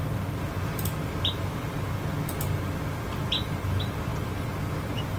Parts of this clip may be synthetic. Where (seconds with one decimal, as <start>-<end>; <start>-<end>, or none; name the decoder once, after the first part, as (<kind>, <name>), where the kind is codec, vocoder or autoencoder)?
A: none